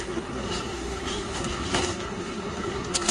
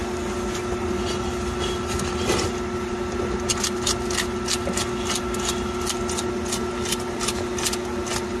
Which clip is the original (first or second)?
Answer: second